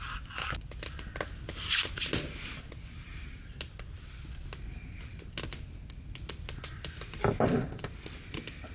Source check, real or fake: real